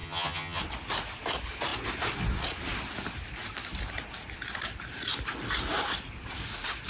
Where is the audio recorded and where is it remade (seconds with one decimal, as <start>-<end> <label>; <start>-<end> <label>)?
0.0-0.6 remade; 0.6-6.9 recorded